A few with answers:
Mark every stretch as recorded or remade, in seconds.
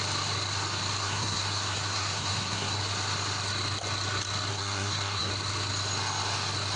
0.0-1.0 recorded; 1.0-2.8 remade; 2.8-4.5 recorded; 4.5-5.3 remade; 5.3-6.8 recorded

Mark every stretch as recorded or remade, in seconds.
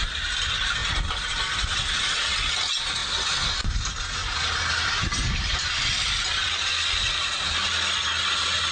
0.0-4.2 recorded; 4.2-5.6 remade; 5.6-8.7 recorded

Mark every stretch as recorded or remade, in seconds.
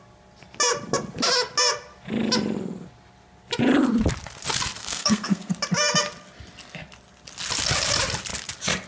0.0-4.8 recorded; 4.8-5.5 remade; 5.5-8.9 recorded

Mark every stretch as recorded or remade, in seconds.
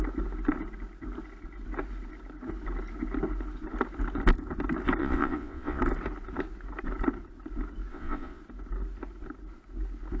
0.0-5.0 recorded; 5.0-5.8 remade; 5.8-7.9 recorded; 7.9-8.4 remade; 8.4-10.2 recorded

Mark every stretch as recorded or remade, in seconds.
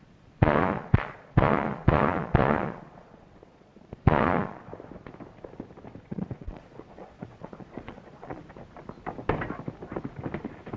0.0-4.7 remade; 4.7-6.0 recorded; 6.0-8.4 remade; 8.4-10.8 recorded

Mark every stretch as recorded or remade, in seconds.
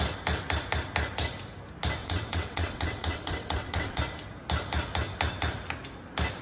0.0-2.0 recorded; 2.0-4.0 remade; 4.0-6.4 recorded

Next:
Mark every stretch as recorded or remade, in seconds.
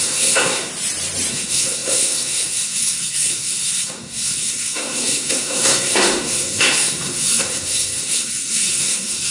0.0-0.7 remade; 0.7-1.3 recorded; 1.3-9.3 remade